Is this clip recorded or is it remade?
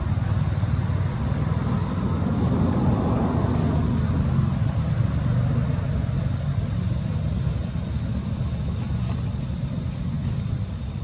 recorded